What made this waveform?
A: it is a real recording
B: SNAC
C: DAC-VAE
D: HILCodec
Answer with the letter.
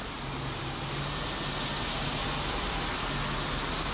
A